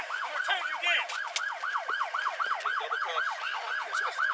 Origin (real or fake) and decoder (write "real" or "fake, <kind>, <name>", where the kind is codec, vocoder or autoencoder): real